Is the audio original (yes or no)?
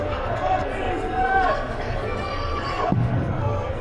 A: no